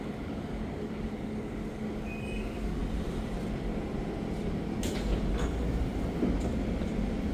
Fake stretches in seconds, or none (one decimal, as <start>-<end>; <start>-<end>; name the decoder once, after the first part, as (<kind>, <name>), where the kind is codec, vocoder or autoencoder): 0.0-2.8 (codec, DAC)